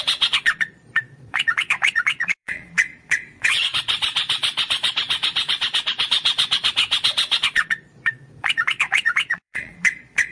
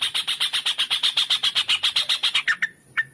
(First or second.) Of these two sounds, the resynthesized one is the first